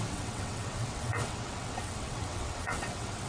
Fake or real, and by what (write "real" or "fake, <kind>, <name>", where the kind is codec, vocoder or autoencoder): fake, vocoder, WaveNeXt